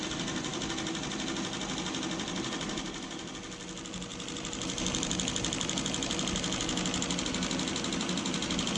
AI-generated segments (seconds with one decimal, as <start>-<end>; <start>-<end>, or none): none